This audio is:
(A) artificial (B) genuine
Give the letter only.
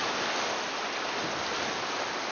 B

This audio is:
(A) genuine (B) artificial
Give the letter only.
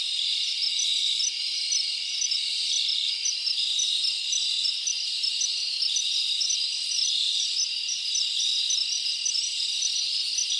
A